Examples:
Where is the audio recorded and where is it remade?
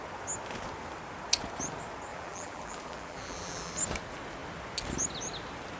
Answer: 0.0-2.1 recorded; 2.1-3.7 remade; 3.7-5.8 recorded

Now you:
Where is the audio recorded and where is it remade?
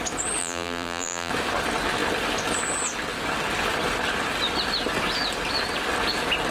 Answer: 0.0-0.4 recorded; 0.4-1.3 remade; 1.3-6.5 recorded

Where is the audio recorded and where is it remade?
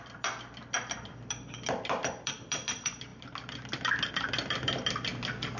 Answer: 0.0-5.6 remade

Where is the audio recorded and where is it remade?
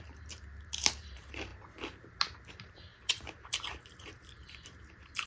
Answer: 0.0-1.5 remade; 1.5-2.5 recorded; 2.5-5.3 remade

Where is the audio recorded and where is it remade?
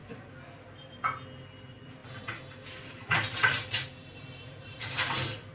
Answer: 0.0-1.0 remade; 1.0-2.0 recorded; 2.0-4.8 remade; 4.8-5.5 recorded